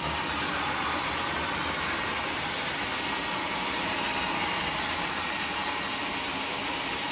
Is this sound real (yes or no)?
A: yes